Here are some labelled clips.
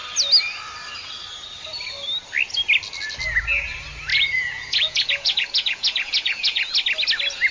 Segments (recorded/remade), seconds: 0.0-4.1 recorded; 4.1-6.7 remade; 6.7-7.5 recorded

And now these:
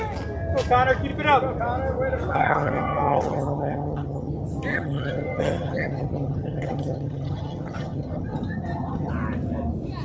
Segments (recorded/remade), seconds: 0.0-2.3 recorded; 2.3-4.3 remade; 4.3-4.7 recorded; 4.7-9.1 remade; 9.1-10.0 recorded

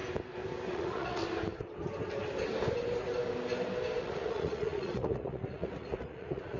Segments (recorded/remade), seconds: 0.0-0.7 recorded; 0.7-1.2 remade; 1.2-4.0 recorded; 4.0-6.6 remade

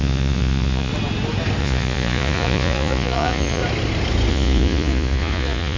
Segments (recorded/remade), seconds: 0.0-0.9 remade; 0.9-1.6 recorded; 1.6-3.6 remade; 3.6-4.3 recorded; 4.3-5.8 remade

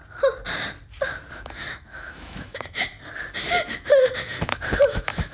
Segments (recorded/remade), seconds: 0.0-1.3 recorded; 1.3-2.9 remade; 2.9-3.7 recorded; 3.7-5.3 remade

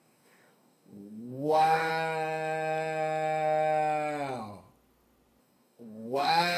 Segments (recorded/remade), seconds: 0.0-1.9 remade; 1.9-5.4 recorded; 5.4-6.6 remade

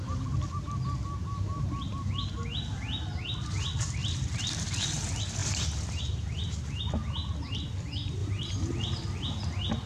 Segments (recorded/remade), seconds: 0.0-5.4 recorded; 5.4-6.0 remade; 6.0-9.9 recorded